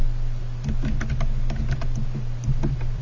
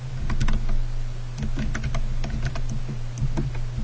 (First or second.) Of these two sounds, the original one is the second